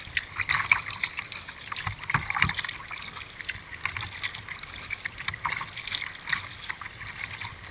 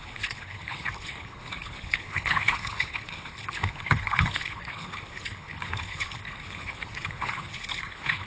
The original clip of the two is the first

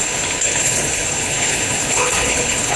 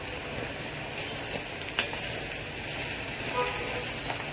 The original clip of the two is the second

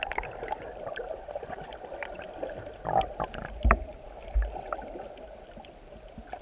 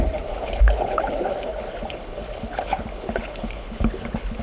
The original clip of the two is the first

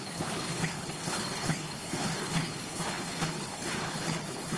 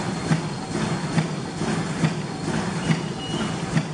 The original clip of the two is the second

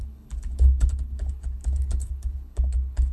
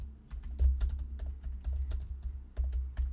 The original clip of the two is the second